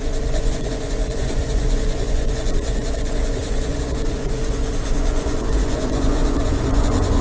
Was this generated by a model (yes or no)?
yes